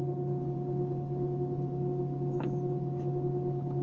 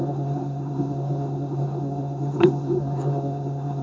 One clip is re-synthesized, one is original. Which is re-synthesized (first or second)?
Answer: second